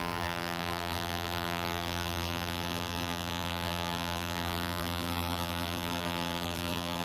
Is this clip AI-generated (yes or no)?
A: yes